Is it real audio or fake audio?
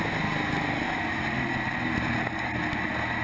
real